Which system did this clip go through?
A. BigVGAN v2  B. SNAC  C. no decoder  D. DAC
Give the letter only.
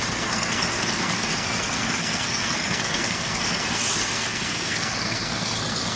B